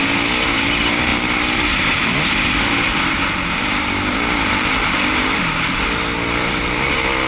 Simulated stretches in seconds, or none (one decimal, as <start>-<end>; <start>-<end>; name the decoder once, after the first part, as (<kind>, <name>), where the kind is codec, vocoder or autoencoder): none